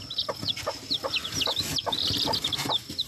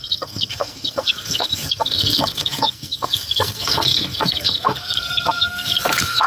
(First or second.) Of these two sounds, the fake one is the second